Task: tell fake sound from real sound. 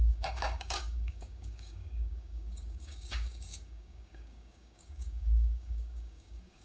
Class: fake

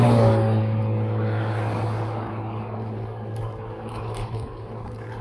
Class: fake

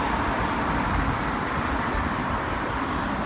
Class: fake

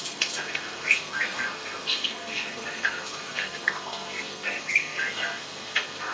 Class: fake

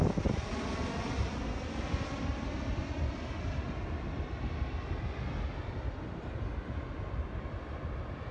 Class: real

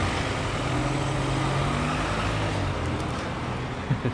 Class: real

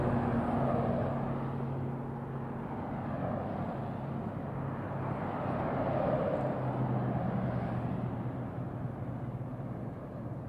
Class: real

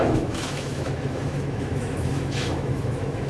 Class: fake